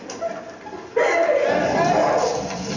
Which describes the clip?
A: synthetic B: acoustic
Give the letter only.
B